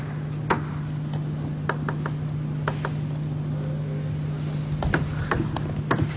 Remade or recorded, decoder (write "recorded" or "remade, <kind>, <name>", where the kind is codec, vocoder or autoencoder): recorded